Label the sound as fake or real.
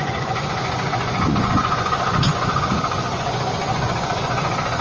fake